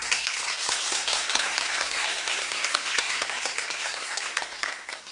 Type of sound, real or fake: fake